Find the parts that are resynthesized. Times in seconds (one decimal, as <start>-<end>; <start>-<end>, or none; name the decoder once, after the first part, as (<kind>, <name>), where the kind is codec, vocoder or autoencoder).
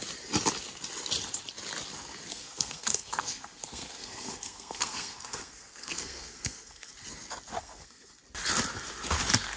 2.3-6.9 (codec, SNAC); 7.6-8.1